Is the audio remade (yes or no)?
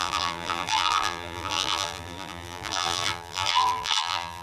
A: yes